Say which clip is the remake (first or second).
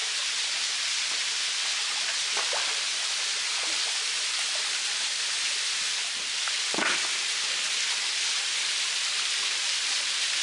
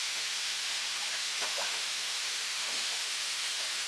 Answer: second